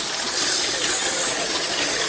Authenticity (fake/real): real